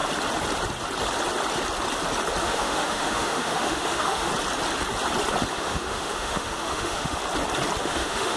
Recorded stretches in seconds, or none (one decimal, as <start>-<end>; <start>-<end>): 0.0-2.4; 4.3-5.5; 7.2-7.8

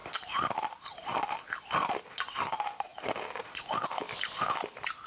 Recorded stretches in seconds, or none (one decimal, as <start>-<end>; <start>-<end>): 0.0-5.1

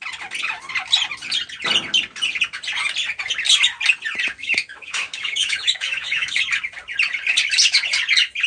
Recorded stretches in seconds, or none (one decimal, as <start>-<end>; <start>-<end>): 0.0-4.4; 6.4-8.5